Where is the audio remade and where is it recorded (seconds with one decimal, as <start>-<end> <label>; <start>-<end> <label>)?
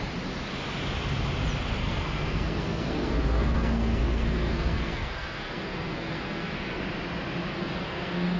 0.0-1.8 recorded; 1.8-6.8 remade; 6.8-7.5 recorded; 7.5-8.4 remade